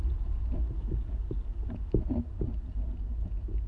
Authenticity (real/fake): real